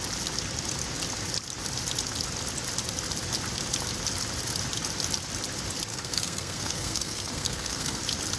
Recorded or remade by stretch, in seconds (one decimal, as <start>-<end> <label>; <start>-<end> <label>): 0.0-5.9 recorded; 5.9-8.0 remade; 8.0-8.4 recorded

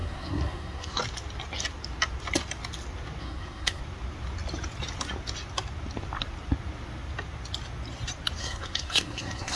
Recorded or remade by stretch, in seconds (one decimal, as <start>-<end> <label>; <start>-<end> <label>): 0.0-1.0 remade; 1.0-3.2 recorded; 3.2-3.8 remade; 3.8-8.4 recorded; 8.4-9.6 remade

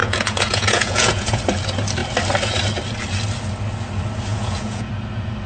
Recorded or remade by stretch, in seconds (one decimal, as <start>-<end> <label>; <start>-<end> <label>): 0.0-1.4 remade; 1.4-4.3 recorded; 4.3-4.9 remade; 4.9-5.5 recorded

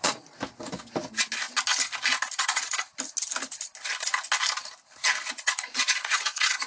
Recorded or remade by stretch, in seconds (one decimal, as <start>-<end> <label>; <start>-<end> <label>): 0.0-0.4 remade; 0.4-2.4 recorded; 2.4-2.9 remade; 2.9-5.3 recorded; 5.3-6.7 remade